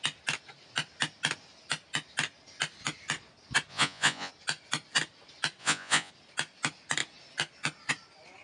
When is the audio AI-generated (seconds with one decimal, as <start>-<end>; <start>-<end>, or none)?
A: 3.7-4.3; 5.6-6.1